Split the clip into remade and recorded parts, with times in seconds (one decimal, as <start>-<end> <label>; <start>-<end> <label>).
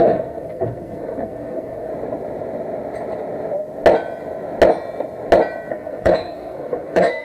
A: 0.0-1.9 remade; 1.9-5.7 recorded; 5.7-7.2 remade